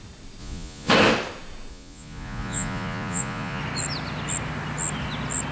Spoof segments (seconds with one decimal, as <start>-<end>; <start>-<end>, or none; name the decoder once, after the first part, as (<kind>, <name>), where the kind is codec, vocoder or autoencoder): 0.4-0.9 (vocoder, Vocos); 1.7-3.6

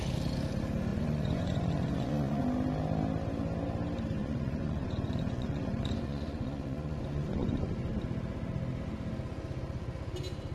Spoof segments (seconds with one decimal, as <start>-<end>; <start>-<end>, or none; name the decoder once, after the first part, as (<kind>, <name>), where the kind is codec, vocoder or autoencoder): 0.9-2.4 (vocoder, Vocos); 4.2-7.7

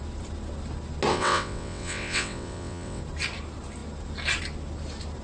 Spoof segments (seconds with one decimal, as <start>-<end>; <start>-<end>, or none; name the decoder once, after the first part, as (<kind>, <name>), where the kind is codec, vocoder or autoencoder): 1.1-3.0 (vocoder, WaveNeXt)

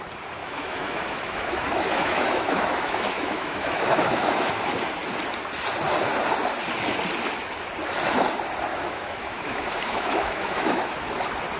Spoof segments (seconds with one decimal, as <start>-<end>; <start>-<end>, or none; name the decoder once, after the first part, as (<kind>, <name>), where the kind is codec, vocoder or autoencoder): 0.4-4.5 (autoencoder, DAC-VAE); 8.7-10.9

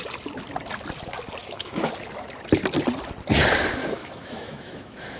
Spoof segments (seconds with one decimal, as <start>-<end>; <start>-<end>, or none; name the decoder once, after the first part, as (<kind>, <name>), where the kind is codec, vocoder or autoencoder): 1.4-1.9 (autoencoder, DAC-VAE); 3.8-5.2

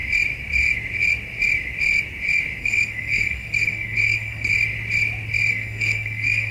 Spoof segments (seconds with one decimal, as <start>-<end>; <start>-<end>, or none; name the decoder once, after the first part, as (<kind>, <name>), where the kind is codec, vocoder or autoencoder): 2.6-4.5 (codec, SNAC); 5.5-6.5

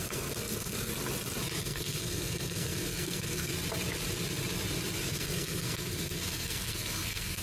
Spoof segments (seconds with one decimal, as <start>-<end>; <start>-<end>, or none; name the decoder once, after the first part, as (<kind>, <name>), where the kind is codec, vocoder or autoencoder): 0.0-0.9 (codec, SNAC); 1.6-3.5; 5.0-7.4

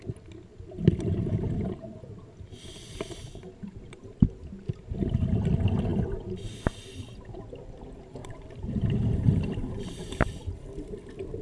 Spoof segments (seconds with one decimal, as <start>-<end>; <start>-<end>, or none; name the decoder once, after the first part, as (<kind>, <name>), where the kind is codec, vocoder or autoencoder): 8.2-10.2 (vocoder, BigVGAN v2)